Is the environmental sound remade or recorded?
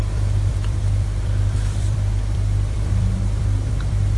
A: remade